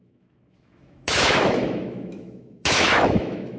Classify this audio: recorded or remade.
remade